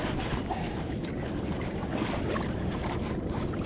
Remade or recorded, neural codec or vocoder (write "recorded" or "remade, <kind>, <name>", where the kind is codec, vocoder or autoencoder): recorded